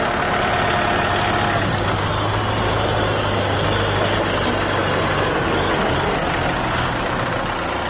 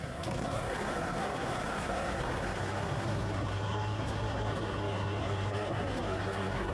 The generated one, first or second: second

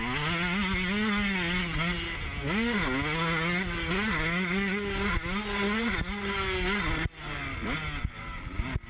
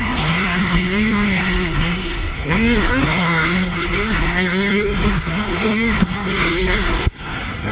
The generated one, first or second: second